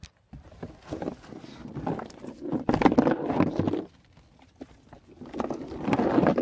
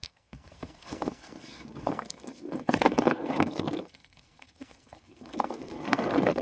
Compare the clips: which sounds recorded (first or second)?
first